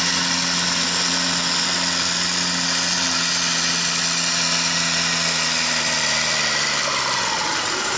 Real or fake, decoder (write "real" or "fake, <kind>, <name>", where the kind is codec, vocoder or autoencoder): real